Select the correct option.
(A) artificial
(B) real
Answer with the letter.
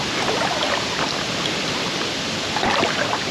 A